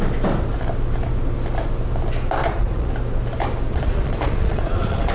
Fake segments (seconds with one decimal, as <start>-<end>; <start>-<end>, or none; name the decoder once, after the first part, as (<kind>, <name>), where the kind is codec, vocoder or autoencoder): 2.4-2.9 (vocoder, Vocos); 3.7-5.1